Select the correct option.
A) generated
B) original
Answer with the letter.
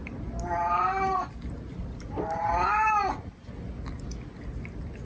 B